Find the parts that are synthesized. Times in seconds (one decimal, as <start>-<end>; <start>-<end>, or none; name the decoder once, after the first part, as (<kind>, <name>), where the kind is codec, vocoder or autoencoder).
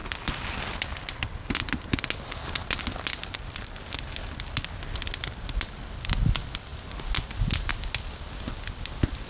none